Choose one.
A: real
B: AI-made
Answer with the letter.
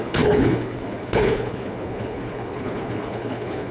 B